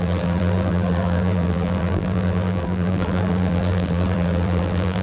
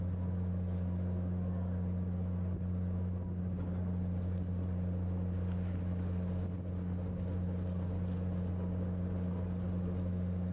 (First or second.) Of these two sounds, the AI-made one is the first